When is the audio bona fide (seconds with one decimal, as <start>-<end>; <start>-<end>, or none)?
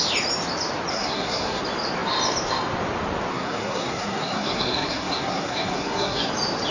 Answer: 0.0-0.9; 1.6-3.3; 6.3-6.7